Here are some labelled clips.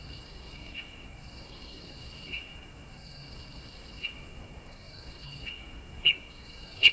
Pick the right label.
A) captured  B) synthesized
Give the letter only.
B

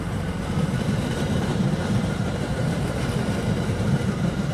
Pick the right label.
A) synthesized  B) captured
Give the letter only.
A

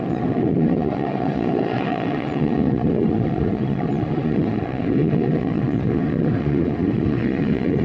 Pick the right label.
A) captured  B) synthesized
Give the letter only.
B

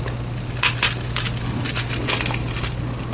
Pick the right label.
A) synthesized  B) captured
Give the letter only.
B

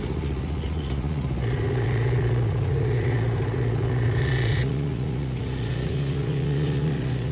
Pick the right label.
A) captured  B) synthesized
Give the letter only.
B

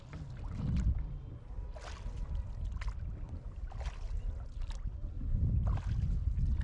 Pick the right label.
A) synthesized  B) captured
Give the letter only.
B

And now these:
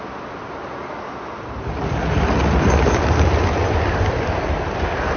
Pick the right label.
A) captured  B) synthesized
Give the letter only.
A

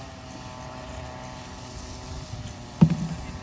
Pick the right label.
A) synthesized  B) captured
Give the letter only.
B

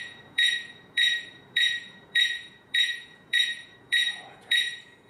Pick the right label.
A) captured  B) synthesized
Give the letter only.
B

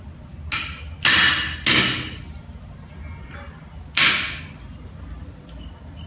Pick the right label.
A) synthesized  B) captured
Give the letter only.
B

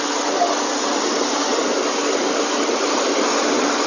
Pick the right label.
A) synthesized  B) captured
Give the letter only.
B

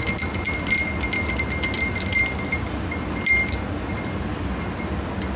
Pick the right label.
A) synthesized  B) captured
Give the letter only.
B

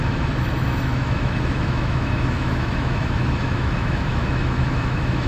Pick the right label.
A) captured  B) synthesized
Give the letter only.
B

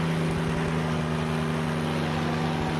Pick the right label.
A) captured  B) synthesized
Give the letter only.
A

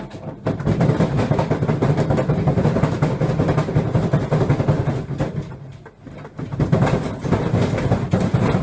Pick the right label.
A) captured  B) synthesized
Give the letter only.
A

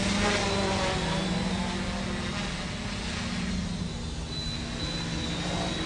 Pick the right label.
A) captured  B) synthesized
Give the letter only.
A